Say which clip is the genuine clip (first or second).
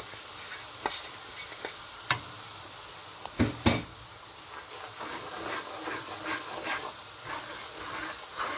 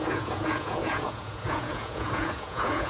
first